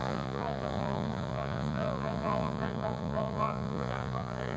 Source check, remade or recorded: remade